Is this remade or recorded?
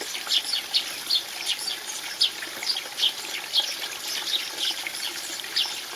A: recorded